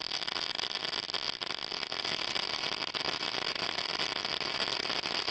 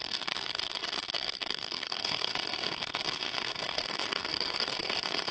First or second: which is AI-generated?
second